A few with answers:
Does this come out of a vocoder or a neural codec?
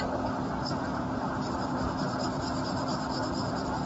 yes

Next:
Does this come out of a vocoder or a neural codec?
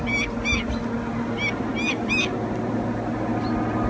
no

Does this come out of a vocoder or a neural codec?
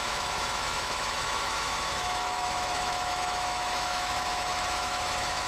yes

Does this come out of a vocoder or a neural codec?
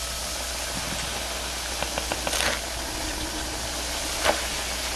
no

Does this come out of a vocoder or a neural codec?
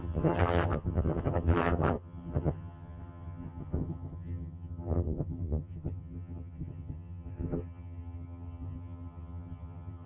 yes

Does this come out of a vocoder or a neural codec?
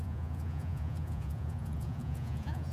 yes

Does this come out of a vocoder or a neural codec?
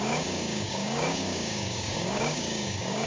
yes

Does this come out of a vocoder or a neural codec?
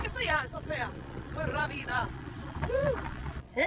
yes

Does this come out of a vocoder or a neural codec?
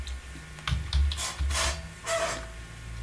no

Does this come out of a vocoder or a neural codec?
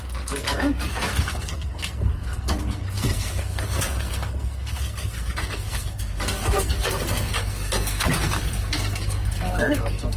yes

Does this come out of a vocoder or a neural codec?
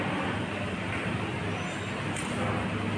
no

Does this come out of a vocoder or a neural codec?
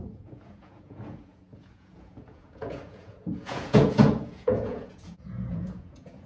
yes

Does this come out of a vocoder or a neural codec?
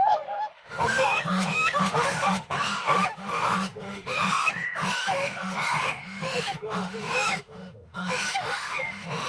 yes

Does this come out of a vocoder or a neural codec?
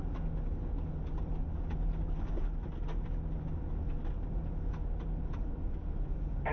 no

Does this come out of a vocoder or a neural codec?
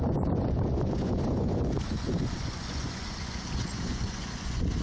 yes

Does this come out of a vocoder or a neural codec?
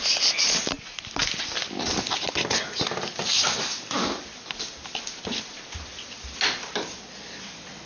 no